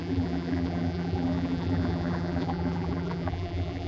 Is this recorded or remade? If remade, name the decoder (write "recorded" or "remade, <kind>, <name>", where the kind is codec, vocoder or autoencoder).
remade, vocoder, BigVGAN v2